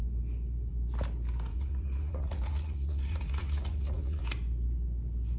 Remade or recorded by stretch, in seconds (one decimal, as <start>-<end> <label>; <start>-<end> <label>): 0.0-1.5 recorded; 1.5-4.2 remade; 4.2-5.4 recorded